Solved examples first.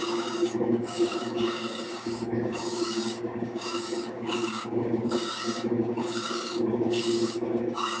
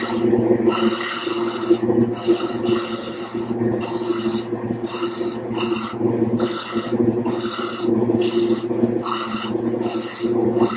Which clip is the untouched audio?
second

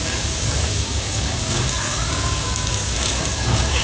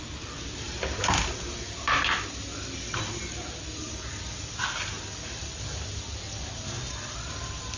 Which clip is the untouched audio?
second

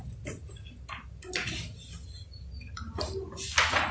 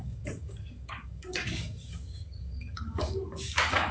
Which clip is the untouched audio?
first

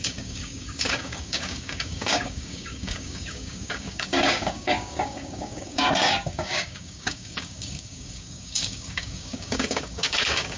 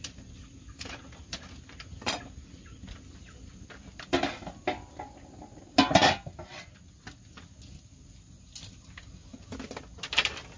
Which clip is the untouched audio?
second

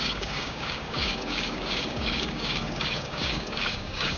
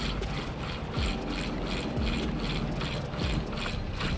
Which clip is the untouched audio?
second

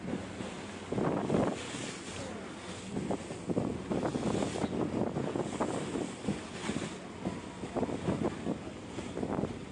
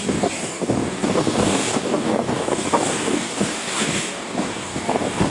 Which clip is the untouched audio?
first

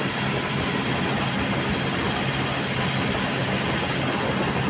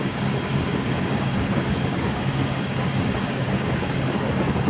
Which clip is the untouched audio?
first